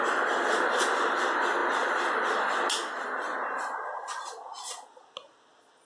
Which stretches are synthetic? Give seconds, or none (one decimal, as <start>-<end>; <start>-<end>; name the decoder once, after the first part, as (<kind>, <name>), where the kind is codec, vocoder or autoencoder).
none